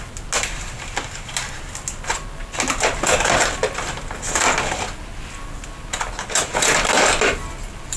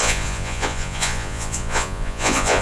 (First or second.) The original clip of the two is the first